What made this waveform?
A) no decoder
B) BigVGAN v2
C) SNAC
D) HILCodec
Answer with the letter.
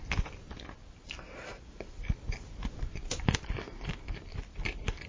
A